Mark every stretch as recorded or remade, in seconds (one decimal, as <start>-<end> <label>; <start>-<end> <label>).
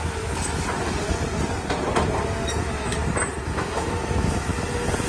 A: 0.0-2.6 recorded; 2.6-3.0 remade; 3.0-3.5 recorded; 3.5-4.5 remade; 4.5-5.1 recorded